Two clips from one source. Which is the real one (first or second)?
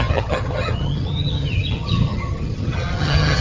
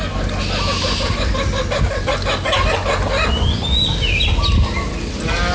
second